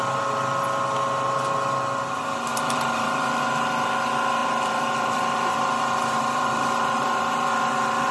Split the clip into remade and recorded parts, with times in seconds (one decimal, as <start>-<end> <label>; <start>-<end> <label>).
0.0-2.5 recorded; 2.5-3.4 remade; 3.4-4.4 recorded; 4.4-8.1 remade